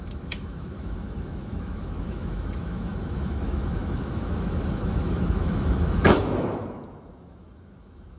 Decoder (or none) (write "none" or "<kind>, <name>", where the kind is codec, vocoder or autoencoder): autoencoder, DAC-VAE